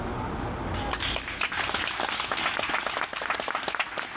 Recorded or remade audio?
recorded